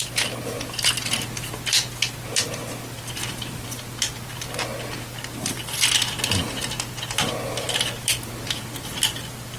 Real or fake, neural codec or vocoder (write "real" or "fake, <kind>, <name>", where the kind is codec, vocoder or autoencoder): real